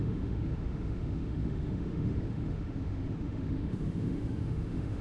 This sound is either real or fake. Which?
fake